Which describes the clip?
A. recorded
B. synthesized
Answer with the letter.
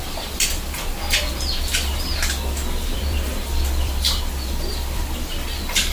B